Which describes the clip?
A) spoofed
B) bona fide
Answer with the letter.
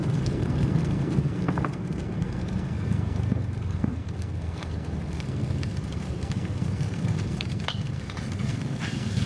A